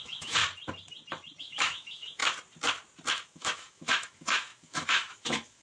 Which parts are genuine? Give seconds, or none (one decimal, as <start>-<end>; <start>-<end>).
0.4-1.4; 2.2-3.1